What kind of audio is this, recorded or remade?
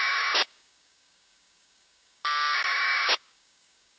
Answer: remade